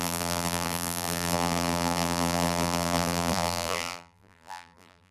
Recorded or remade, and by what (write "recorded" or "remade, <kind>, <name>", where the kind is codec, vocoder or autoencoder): remade, vocoder, BigVGAN v2